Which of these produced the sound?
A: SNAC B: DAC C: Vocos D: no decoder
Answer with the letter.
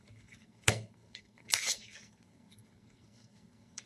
A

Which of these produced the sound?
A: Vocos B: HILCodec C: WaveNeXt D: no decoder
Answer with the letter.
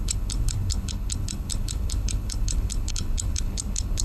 B